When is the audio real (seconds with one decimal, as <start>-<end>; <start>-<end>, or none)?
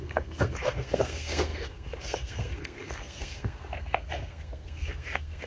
none